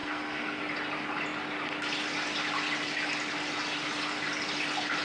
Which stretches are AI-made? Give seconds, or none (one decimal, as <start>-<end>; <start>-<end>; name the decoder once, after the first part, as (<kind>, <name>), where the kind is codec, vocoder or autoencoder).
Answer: 0.0-0.6 (codec, SNAC)